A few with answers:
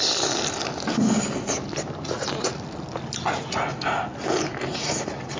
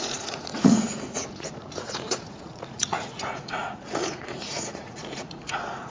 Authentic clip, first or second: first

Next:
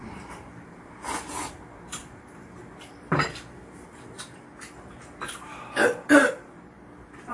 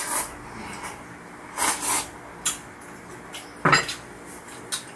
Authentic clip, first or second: second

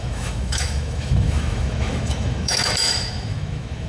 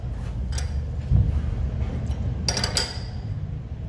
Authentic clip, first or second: second